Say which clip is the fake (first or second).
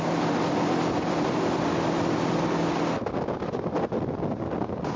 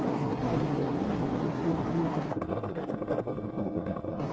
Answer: second